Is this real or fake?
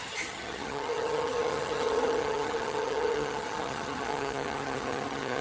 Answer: fake